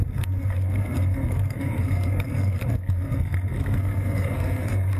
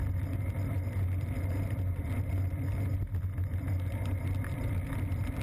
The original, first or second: second